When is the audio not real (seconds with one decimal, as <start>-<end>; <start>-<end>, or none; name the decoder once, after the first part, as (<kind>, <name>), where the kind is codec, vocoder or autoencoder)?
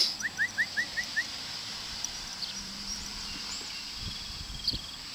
2.3-3.0 (vocoder, BigVGAN v2)